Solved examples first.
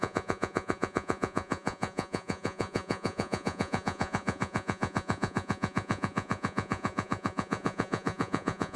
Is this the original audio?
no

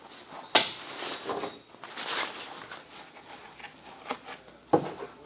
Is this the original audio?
yes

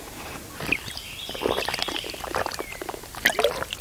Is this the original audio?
yes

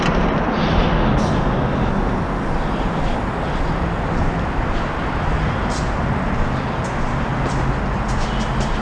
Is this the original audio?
yes